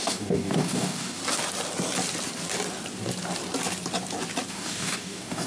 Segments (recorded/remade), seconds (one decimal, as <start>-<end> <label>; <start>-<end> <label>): 0.0-1.2 remade; 1.2-4.5 recorded; 4.5-5.5 remade